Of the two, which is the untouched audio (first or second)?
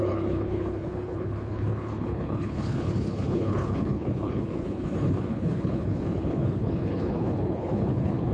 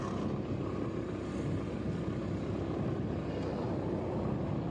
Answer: second